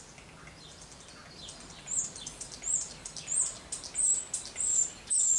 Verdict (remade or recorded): recorded